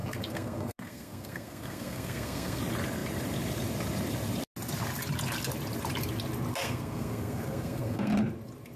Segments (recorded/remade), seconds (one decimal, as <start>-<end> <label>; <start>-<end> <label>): 0.0-2.6 remade; 2.6-6.5 recorded; 6.5-8.1 remade; 8.1-8.8 recorded